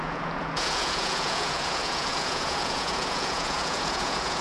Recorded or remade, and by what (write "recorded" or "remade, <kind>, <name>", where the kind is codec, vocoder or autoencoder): remade, vocoder, Vocos